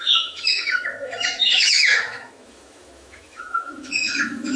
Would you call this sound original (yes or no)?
no